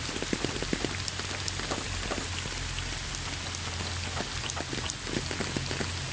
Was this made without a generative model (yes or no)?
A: yes